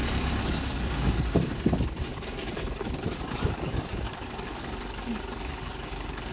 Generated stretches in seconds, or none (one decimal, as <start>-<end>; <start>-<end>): 0.0-1.1; 2.1-6.3